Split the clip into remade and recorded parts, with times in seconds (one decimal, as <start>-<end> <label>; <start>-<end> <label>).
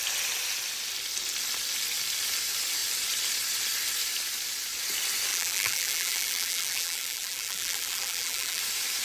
0.0-5.3 recorded; 5.3-8.6 remade; 8.6-9.0 recorded